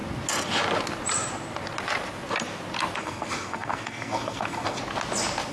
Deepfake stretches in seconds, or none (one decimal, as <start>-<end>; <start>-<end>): 3.0-4.8